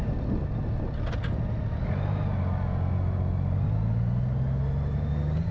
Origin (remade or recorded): recorded